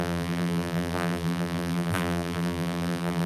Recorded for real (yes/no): no